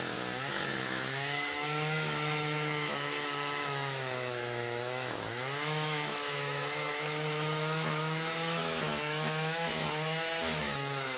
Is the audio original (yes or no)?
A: no